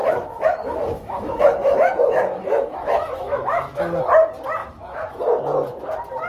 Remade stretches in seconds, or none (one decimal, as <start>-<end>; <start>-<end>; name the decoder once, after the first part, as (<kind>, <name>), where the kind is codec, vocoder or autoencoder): 0.0-3.8 (autoencoder, DAC-VAE); 4.6-5.2